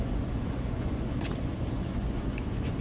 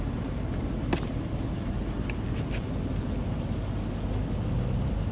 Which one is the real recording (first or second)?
second